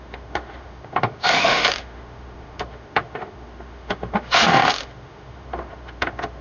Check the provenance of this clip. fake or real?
fake